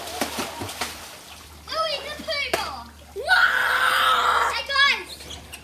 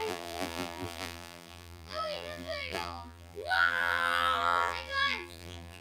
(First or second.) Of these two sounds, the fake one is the second